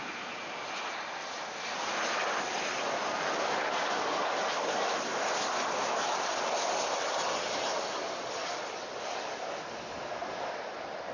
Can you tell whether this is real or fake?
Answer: real